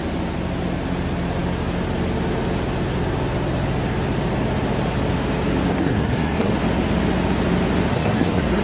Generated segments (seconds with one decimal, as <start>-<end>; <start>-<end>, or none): 5.7-6.5; 7.9-8.6